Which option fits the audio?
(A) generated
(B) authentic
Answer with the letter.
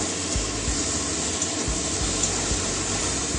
B